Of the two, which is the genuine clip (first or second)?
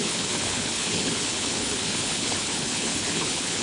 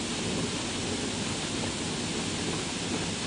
second